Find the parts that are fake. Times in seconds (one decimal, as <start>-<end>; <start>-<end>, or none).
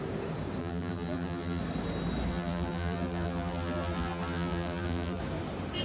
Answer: 0.6-1.6; 2.3-5.2